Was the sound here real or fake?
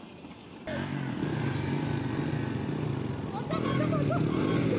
real